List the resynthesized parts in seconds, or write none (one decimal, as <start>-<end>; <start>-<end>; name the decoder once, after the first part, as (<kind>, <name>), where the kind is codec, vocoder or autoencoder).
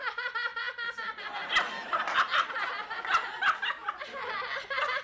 none